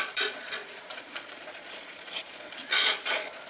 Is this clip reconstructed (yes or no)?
yes